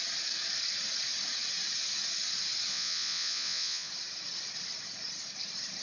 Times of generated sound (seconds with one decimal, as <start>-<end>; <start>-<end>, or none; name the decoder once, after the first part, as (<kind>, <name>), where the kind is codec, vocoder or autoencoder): 2.7-3.9 (vocoder, Vocos)